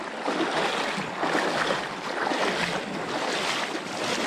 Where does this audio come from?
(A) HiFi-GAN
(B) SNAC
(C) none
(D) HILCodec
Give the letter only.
C